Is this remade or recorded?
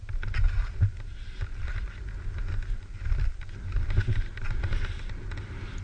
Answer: recorded